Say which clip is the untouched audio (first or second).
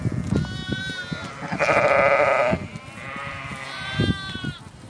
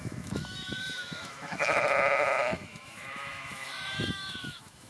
first